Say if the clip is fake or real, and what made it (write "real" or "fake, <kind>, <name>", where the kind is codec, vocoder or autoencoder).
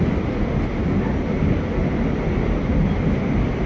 real